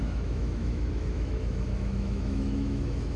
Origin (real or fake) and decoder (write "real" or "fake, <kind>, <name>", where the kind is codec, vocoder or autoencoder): fake, autoencoder, DAC-VAE